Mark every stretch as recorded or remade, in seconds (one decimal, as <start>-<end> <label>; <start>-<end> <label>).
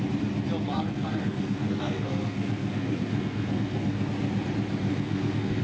0.0-0.7 recorded; 0.7-4.1 remade; 4.1-4.9 recorded; 4.9-5.6 remade